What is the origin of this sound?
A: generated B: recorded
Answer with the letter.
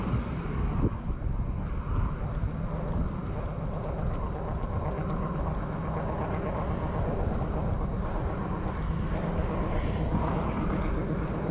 B